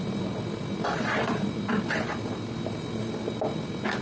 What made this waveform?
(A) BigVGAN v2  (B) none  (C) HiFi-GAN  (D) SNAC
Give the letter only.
B